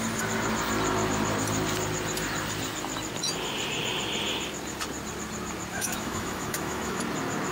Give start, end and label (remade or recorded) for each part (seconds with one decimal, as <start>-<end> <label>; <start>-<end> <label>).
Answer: 0.0-5.7 recorded; 5.7-7.0 remade; 7.0-7.5 recorded